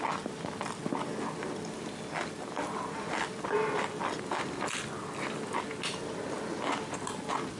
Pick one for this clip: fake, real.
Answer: real